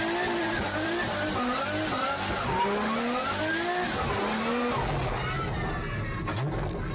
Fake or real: real